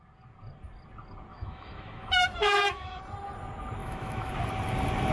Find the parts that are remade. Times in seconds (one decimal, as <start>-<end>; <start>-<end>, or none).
1.3-3.0; 3.8-4.3